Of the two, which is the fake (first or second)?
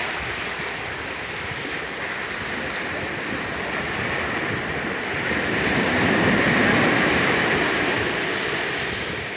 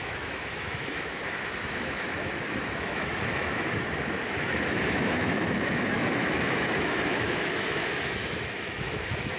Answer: second